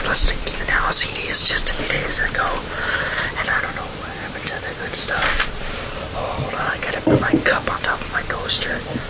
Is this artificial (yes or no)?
yes